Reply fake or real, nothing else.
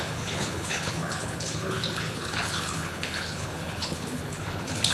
fake